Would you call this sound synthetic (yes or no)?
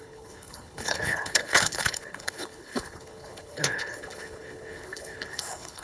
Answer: yes